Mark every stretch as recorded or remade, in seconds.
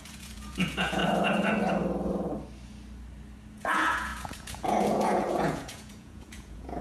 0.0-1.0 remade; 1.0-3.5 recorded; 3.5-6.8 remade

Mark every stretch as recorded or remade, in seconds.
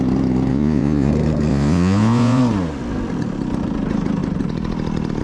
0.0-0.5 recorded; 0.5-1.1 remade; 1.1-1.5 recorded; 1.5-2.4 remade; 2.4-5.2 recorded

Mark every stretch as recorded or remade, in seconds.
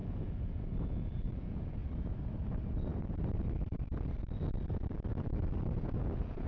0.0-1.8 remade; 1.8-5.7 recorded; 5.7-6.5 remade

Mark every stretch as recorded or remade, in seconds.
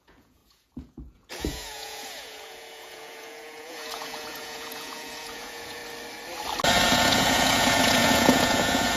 0.0-5.8 remade; 5.8-6.9 recorded; 6.9-9.0 remade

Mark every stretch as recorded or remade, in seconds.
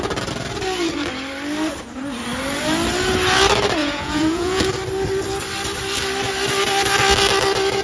0.0-3.8 recorded; 3.8-4.6 remade; 4.6-7.8 recorded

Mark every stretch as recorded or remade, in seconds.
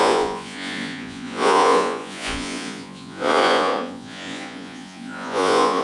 0.0-5.8 remade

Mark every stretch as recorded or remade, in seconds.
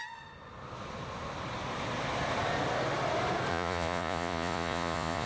0.0-3.5 recorded; 3.5-5.3 remade